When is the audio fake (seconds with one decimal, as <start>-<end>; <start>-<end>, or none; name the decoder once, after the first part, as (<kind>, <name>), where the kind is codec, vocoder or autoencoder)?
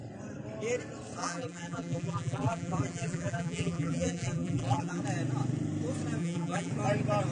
1.2-5.0 (vocoder, BigVGAN v2); 6.2-6.7